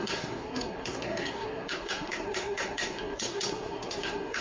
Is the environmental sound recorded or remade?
remade